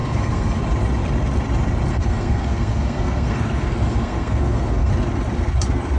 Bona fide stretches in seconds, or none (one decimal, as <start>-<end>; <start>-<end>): 0.6-1.9; 4.9-6.0